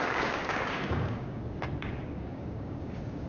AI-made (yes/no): yes